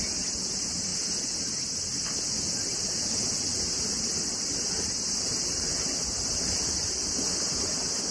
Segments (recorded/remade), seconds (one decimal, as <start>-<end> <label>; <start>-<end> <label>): 0.0-8.1 recorded